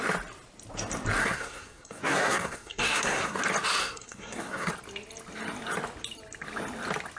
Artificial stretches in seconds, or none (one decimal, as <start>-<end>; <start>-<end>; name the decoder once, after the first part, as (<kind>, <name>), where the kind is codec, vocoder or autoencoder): 1.2-3.4 (codec, SNAC); 3.8-4.7